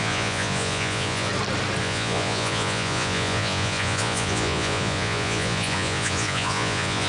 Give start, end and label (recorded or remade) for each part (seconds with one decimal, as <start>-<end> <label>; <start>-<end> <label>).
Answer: 0.0-1.3 remade; 1.3-1.8 recorded; 1.8-7.1 remade